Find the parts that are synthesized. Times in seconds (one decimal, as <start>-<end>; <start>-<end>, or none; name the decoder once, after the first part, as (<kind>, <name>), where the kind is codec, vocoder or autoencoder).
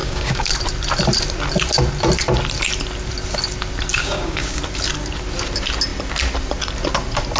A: 0.0-0.5 (codec, DAC); 3.9-4.6